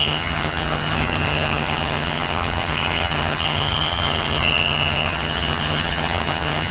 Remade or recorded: remade